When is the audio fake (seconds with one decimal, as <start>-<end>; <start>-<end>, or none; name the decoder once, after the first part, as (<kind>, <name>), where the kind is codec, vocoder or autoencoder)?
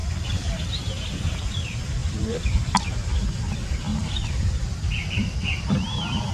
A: 0.0-0.7 (vocoder, BigVGAN v2); 2.0-2.8; 3.9-6.3